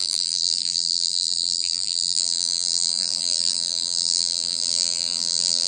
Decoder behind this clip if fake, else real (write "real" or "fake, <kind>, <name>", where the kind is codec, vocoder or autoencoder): fake, vocoder, BigVGAN v2